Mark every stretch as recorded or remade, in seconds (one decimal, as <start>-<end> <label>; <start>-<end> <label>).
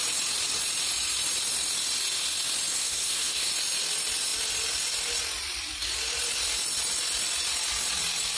0.0-2.7 recorded; 2.7-3.5 remade; 3.5-8.4 recorded